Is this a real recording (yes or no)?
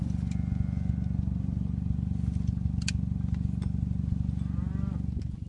yes